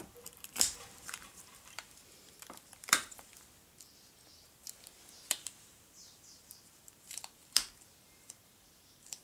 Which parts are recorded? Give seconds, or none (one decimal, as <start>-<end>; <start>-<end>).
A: 3.3-4.3